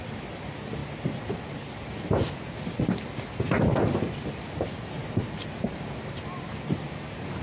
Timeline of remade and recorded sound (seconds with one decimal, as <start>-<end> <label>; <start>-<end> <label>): 0.0-5.0 recorded; 5.0-5.8 remade; 5.8-7.4 recorded